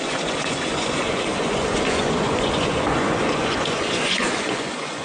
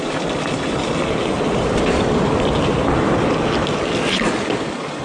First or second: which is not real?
first